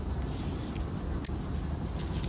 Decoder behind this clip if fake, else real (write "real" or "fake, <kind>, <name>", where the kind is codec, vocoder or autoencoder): real